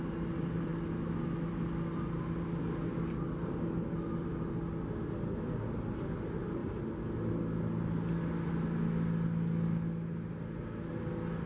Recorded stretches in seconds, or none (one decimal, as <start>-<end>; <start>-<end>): 0.0-11.5